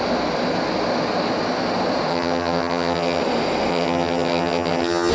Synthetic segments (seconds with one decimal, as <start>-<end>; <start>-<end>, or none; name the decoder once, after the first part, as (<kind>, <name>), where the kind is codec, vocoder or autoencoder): 2.1-3.2 (vocoder, HiFi-GAN); 3.7-5.1